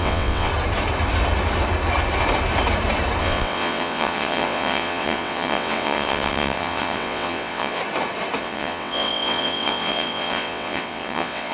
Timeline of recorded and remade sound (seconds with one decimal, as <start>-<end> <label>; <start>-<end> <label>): 0.0-0.5 remade; 0.5-3.2 recorded; 3.2-7.8 remade; 7.8-8.4 recorded; 8.4-11.5 remade